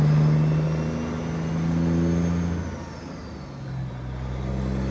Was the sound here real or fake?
real